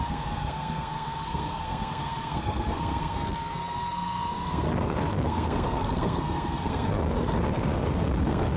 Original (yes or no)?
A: no